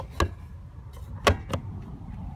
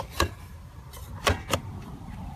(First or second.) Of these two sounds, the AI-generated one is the second